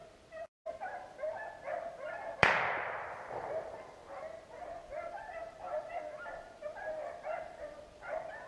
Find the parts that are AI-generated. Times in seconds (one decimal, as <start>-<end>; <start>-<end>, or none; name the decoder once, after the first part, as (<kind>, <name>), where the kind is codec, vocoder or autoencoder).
2.1-4.0 (vocoder, BigVGAN v2); 5.1-8.5